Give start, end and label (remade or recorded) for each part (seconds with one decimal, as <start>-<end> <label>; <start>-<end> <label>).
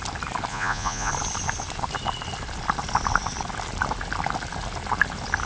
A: 0.0-0.5 recorded; 0.5-1.1 remade; 1.1-5.5 recorded